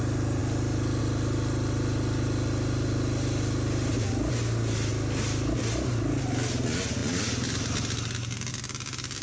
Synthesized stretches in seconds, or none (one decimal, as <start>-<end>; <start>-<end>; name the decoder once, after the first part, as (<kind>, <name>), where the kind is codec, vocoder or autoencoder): none